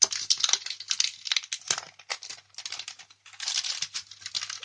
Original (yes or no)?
yes